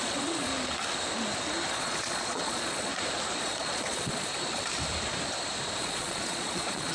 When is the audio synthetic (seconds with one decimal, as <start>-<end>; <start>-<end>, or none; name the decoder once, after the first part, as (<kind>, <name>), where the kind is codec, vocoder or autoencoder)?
0.0-0.5 (vocoder, Vocos); 1.7-2.9; 3.4-4.3; 5.8-6.9